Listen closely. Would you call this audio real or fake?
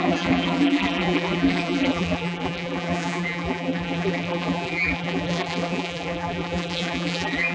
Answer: fake